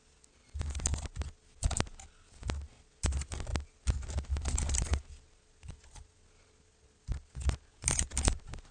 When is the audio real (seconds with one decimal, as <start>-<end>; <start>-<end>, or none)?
0.0-8.7